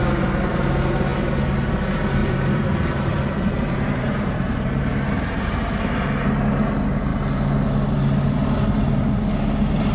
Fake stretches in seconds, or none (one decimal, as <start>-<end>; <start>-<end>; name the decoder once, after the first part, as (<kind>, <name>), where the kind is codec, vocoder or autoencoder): 2.2-5.8 (vocoder, BigVGAN v2)